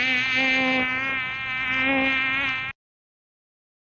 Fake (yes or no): no